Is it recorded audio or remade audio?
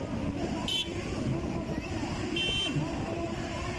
recorded